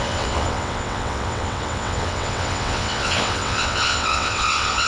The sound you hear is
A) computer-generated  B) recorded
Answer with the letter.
A